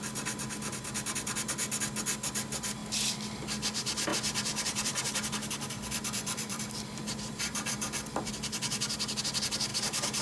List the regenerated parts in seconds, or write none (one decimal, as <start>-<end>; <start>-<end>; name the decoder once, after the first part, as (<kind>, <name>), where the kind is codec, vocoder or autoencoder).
4.1-8.3 (vocoder, BigVGAN v2); 9.7-10.2